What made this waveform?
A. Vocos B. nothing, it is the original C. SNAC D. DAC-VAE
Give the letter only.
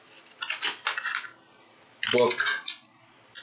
B